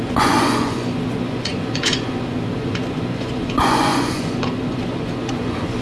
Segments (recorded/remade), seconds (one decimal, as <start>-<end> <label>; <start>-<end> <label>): 0.0-5.8 remade